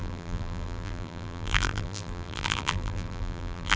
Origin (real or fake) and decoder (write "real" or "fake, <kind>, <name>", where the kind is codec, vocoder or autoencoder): fake, vocoder, BigVGAN v2